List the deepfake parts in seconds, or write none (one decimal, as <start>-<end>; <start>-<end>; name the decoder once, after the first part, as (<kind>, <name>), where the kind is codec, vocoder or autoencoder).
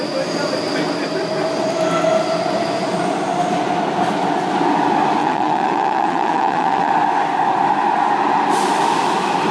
5.2-6.9 (vocoder, WaveNeXt)